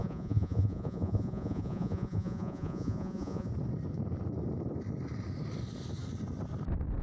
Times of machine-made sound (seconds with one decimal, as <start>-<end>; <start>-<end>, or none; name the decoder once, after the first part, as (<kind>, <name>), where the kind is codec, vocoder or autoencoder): 0.0-3.5 (vocoder, Vocos)